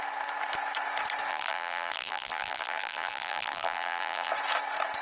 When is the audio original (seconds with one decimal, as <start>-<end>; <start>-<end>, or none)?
0.0-1.3; 4.3-5.0